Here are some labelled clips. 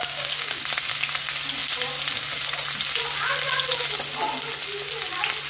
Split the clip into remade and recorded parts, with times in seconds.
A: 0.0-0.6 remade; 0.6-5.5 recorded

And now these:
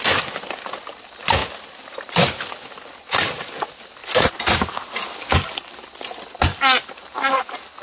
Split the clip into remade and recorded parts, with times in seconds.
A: 0.0-7.8 recorded

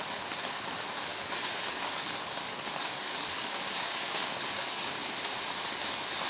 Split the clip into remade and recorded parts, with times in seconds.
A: 0.0-1.1 recorded; 1.1-4.9 remade; 4.9-6.3 recorded

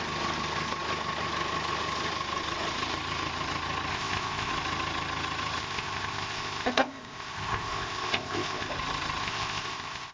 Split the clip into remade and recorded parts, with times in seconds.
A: 0.0-3.9 recorded; 3.9-4.5 remade; 4.5-5.6 recorded; 5.6-8.7 remade; 8.7-9.2 recorded; 9.2-10.1 remade

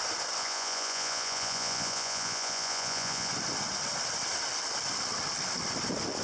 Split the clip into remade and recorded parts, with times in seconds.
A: 0.0-0.4 recorded; 0.4-3.3 remade; 3.3-6.2 recorded

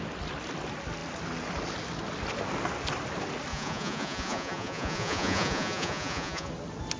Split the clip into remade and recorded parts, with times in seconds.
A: 0.0-3.5 recorded; 3.5-6.5 remade; 6.5-7.0 recorded

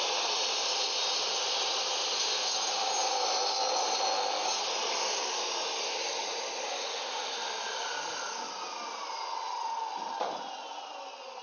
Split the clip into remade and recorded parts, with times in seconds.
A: 0.0-11.4 recorded